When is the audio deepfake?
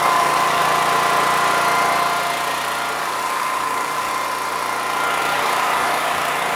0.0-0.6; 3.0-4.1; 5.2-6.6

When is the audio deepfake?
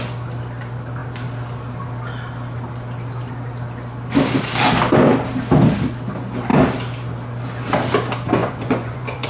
8.4-9.3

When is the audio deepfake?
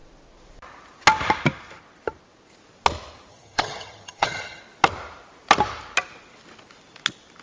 3.3-4.6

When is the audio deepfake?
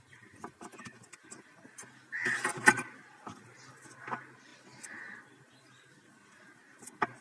none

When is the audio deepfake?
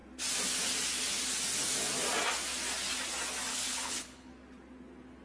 3.5-4.3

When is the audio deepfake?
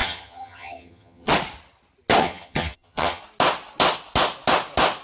0.0-1.3; 2.2-3.2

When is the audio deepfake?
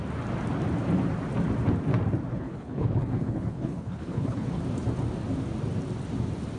2.3-4.6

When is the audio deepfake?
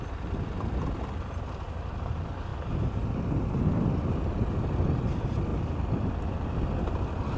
none